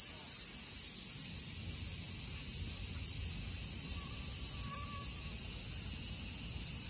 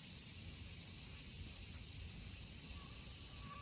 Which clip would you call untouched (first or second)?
first